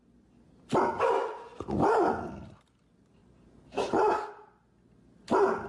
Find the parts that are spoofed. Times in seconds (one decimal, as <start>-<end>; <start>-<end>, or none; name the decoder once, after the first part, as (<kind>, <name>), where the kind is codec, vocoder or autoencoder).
3.2-4.3 (vocoder, BigVGAN v2)